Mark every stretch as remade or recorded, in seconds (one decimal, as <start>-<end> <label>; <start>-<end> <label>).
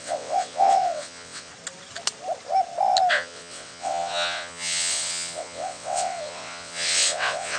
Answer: 0.0-1.5 remade; 1.5-3.1 recorded; 3.1-7.6 remade